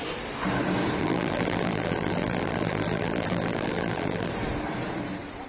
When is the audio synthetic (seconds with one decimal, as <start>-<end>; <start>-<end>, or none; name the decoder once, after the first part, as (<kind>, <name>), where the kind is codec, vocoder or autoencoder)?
1.0-4.3 (vocoder, BigVGAN v2)